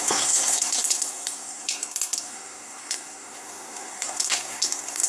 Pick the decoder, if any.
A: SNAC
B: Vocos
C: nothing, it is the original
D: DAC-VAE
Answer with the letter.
A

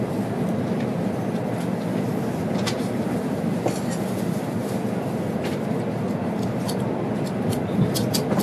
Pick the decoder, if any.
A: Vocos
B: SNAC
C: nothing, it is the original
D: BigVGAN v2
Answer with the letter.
C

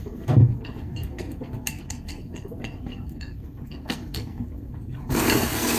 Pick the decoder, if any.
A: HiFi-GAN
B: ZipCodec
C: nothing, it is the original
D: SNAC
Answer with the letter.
D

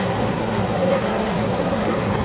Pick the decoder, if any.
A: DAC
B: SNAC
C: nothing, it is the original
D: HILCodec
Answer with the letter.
B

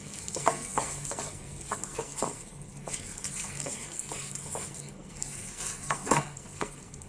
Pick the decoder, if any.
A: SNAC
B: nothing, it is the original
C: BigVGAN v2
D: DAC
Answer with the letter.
A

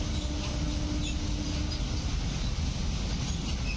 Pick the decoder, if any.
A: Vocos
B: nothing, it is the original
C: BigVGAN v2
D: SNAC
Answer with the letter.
B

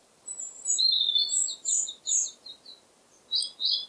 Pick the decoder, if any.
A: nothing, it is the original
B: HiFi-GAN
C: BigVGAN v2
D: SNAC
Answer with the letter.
A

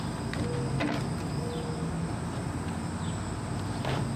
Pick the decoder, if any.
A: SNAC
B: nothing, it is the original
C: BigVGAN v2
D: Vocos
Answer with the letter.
B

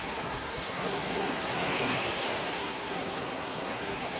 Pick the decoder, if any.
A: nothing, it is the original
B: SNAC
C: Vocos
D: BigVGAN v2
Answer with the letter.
B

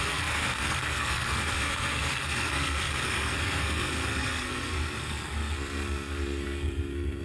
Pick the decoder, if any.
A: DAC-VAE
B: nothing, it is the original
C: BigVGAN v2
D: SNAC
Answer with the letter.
D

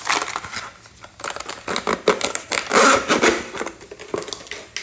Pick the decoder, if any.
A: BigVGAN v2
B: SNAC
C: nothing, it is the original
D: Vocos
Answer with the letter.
C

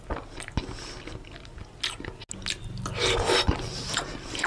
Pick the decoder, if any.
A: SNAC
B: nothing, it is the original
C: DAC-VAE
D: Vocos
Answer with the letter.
B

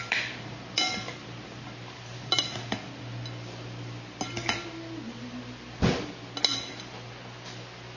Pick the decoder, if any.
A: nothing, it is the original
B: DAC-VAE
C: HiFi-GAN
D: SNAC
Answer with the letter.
A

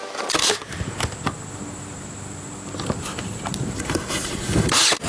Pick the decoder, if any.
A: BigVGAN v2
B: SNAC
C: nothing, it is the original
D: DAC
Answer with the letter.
C